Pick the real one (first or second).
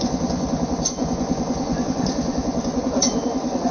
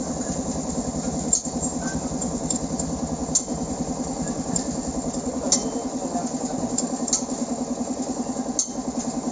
second